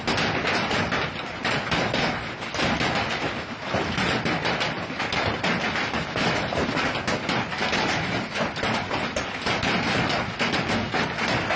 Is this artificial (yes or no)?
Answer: no